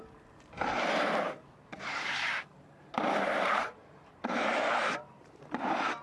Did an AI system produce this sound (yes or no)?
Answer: yes